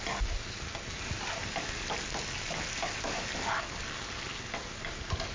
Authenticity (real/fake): real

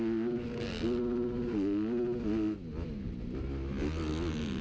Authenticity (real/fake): real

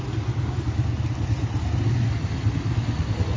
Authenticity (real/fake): real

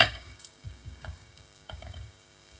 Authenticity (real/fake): fake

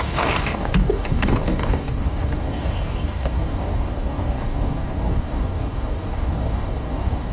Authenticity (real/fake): fake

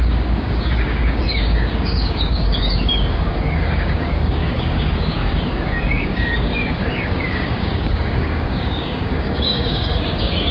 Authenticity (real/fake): fake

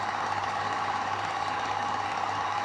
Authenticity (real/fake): fake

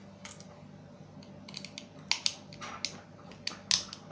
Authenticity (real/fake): real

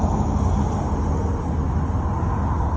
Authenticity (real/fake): real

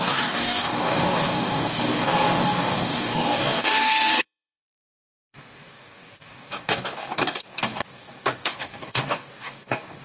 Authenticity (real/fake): fake